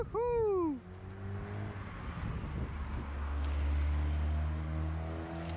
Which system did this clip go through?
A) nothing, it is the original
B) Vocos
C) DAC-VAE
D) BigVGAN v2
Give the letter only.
A